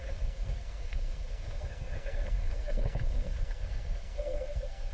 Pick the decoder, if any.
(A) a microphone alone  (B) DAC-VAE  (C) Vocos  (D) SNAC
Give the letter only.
D